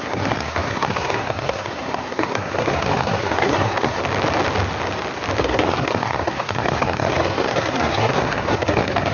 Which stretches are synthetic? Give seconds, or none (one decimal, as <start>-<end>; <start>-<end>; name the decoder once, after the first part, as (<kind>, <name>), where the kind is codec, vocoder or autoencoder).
0.0-4.0 (codec, SNAC); 5.4-9.1